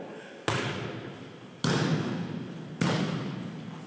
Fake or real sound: real